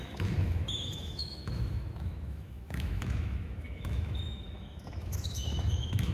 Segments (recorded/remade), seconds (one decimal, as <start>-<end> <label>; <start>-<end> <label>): 0.0-6.1 remade